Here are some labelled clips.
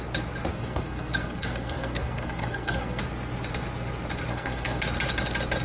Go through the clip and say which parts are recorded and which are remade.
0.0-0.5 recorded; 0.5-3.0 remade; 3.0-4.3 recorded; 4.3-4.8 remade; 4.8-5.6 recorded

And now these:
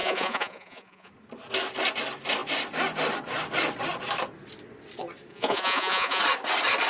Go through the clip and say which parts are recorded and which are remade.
0.0-1.1 remade; 1.1-5.3 recorded; 5.3-6.2 remade; 6.2-6.9 recorded

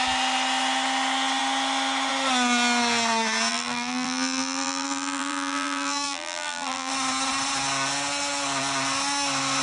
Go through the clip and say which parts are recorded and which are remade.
0.0-3.5 recorded; 3.5-6.9 remade; 6.9-9.6 recorded

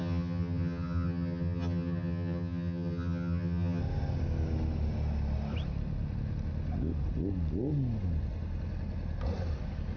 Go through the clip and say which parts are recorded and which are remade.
0.0-3.8 remade; 3.8-10.0 recorded

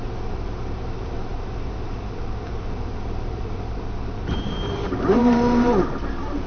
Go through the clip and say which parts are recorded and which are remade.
0.0-5.7 remade; 5.7-6.5 recorded

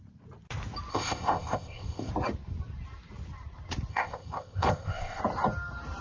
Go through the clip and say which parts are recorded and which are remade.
0.0-0.9 recorded; 0.9-2.1 remade; 2.1-3.9 recorded; 3.9-5.2 remade; 5.2-6.0 recorded